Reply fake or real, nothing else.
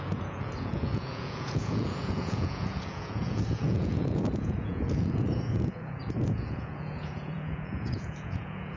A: fake